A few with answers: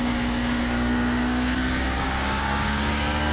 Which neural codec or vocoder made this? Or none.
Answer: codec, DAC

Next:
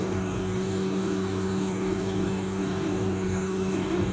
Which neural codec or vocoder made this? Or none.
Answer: codec, DAC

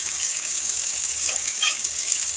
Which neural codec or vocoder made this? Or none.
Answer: codec, DAC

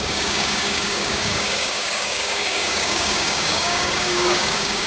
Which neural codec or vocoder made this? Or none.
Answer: codec, DAC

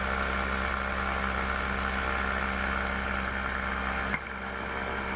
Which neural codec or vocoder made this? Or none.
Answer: none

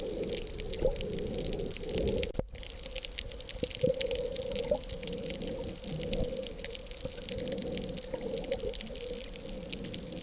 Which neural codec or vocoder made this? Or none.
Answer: none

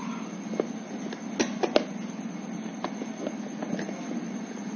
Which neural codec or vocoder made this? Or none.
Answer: none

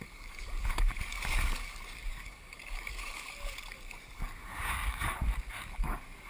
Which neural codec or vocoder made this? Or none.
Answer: codec, DAC